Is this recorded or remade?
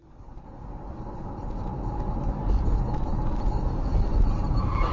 recorded